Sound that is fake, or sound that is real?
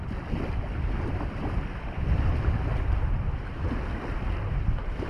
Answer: real